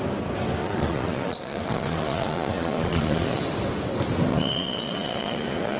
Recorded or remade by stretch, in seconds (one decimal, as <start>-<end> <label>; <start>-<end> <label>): 0.0-0.6 recorded; 0.6-3.4 remade; 3.4-4.3 recorded; 4.3-5.8 remade